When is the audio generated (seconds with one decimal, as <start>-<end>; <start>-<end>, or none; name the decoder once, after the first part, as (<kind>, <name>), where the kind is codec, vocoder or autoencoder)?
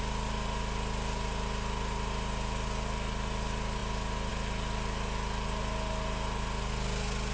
none